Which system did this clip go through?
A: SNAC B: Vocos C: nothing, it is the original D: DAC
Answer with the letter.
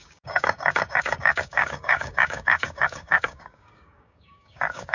D